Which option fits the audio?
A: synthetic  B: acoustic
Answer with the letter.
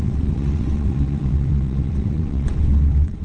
A